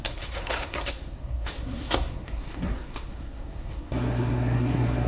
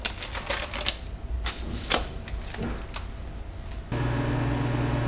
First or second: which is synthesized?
first